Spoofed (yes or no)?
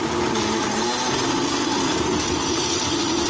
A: no